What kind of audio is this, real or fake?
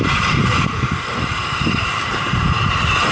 fake